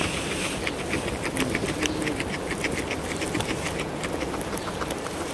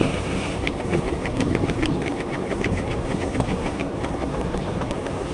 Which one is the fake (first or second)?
second